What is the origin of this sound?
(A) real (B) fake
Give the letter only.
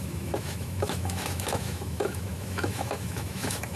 B